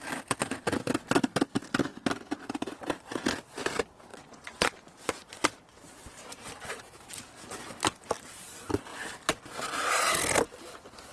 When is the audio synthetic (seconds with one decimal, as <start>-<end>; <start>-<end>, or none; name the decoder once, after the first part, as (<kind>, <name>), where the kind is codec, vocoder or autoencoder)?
4.1-5.5 (vocoder, Vocos)